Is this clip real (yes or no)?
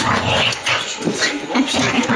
no